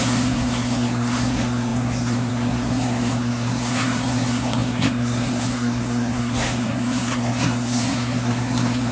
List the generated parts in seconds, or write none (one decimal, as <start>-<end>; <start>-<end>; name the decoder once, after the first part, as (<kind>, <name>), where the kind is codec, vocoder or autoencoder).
0.0-8.9 (codec, SNAC)